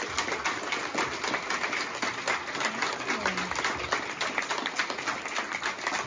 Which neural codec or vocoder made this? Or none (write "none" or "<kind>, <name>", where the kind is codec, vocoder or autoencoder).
none